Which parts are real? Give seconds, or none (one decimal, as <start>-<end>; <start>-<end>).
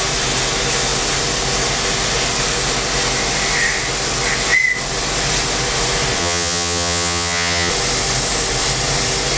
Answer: 0.0-6.2; 7.7-9.4